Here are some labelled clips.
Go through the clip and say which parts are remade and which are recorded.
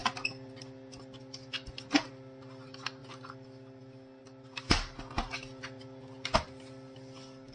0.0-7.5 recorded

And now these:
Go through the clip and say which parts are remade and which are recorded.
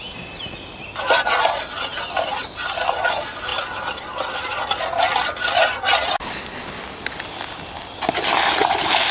0.0-9.1 recorded